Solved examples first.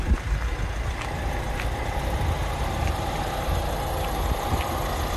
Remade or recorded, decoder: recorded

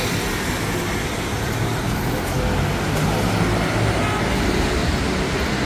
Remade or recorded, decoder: recorded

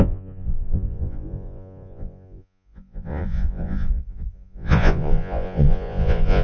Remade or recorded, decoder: remade, vocoder, Vocos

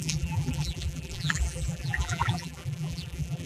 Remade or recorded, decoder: remade, vocoder, BigVGAN v2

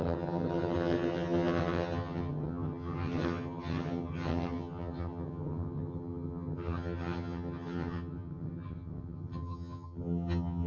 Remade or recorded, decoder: remade, vocoder, HiFi-GAN